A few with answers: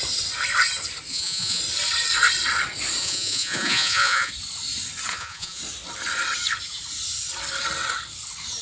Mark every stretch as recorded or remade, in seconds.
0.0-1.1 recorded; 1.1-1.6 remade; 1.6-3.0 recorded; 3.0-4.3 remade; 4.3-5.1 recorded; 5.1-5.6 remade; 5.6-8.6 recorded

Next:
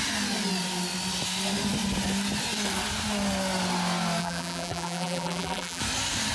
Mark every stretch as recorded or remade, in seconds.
0.0-4.2 recorded; 4.2-5.8 remade; 5.8-6.3 recorded

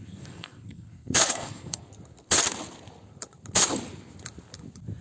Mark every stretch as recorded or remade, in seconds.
0.0-1.9 remade; 1.9-5.0 recorded

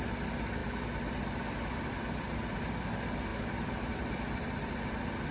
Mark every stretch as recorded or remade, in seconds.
0.0-5.3 recorded

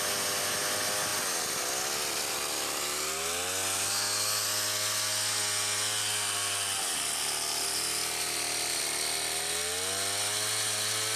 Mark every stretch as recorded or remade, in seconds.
0.0-11.2 recorded